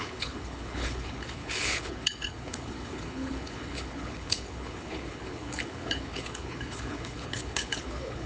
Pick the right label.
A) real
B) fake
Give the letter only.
B